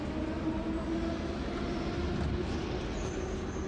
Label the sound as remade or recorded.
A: recorded